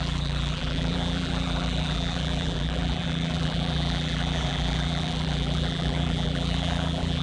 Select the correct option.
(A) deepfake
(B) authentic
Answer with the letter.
A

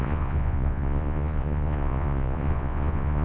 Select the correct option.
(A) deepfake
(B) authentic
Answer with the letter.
A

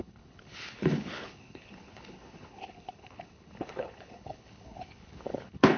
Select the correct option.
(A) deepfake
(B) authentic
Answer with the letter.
A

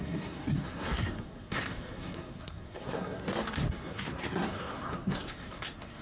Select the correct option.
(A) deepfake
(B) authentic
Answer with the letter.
A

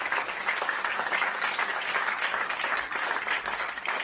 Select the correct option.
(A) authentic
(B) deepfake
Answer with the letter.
B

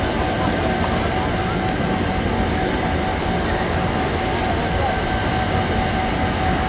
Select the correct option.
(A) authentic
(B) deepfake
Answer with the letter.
A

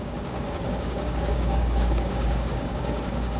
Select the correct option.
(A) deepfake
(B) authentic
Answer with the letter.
A